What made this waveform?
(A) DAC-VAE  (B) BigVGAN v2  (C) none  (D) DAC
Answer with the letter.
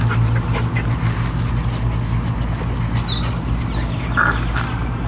C